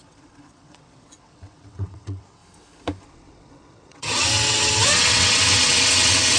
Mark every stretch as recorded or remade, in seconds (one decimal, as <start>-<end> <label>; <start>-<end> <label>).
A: 0.0-2.4 remade; 2.4-3.0 recorded; 3.0-6.4 remade